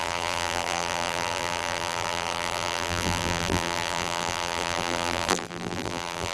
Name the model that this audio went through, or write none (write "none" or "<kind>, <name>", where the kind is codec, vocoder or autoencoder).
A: vocoder, BigVGAN v2